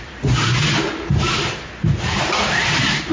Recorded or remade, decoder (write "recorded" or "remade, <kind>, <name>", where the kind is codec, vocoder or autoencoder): remade, vocoder, BigVGAN v2